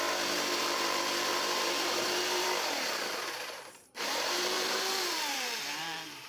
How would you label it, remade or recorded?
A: remade